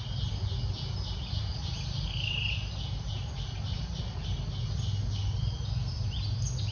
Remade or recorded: recorded